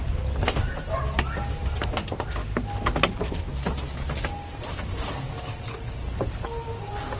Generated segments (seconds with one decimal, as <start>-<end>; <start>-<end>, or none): none